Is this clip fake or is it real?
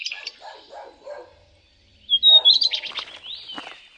real